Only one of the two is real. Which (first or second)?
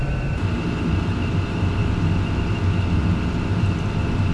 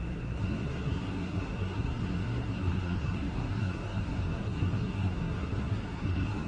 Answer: first